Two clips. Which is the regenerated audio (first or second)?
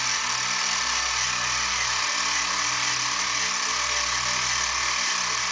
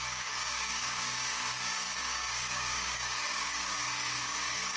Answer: second